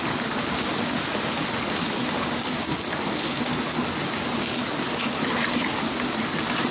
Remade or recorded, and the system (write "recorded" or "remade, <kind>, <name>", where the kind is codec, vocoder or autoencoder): recorded